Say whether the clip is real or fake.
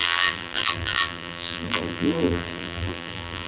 fake